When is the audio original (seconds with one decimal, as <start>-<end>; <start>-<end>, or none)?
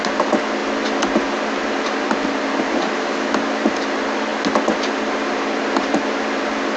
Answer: 0.0-6.8